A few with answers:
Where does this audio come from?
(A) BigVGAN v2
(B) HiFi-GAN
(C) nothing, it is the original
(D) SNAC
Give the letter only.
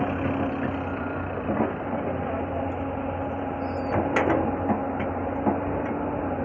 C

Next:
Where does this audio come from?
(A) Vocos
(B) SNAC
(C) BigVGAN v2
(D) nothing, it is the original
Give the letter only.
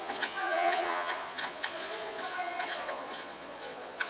A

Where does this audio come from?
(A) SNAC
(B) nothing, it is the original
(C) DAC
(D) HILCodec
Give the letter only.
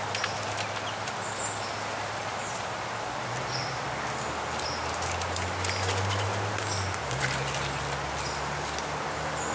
B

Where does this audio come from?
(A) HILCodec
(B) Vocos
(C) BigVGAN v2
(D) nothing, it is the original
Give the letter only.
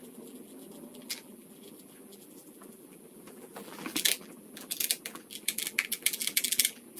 C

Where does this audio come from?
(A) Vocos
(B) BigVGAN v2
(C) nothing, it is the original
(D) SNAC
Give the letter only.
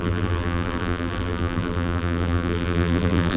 B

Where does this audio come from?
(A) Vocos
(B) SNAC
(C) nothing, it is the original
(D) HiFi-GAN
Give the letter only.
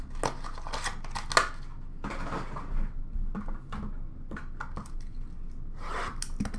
C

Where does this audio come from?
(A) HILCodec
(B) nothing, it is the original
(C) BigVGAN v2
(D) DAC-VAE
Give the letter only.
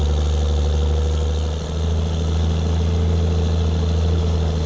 B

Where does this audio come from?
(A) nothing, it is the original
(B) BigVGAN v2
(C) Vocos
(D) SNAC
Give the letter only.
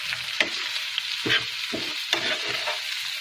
A